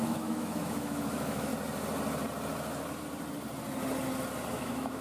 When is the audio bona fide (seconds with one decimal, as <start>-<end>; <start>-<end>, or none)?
1.5-4.5